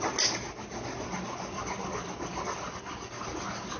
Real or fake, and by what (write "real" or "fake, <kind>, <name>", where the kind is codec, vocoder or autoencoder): real